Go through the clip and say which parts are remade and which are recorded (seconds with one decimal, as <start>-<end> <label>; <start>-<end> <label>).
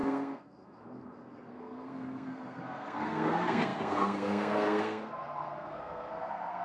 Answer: 0.0-6.6 remade